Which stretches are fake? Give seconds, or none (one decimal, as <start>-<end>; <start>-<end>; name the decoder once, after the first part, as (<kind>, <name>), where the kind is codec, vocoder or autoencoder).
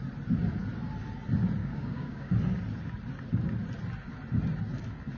1.6-2.3 (codec, DAC)